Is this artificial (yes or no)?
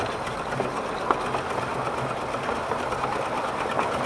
no